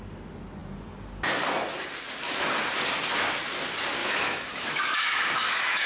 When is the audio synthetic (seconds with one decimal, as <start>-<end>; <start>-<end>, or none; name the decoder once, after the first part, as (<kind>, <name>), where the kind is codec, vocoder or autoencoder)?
4.0-5.9 (autoencoder, DAC-VAE)